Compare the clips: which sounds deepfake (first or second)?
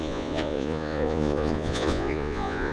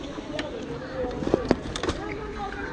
first